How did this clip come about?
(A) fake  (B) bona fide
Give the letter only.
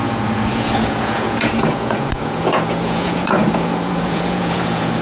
A